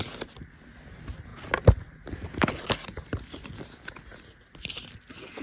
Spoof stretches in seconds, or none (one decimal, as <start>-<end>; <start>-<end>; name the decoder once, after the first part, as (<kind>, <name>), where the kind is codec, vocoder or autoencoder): none